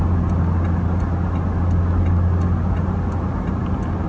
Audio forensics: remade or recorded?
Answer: recorded